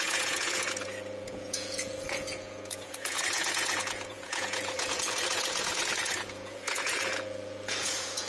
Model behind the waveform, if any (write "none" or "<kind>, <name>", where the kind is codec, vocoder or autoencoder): vocoder, Vocos